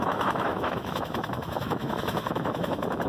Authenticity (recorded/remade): remade